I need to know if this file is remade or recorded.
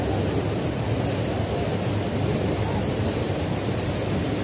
recorded